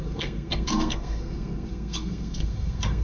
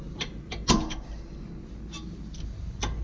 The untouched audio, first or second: second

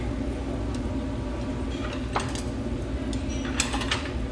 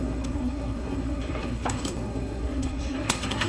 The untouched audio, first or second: first